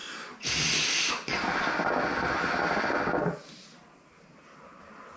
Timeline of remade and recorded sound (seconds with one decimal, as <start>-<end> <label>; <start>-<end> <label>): 0.0-5.2 recorded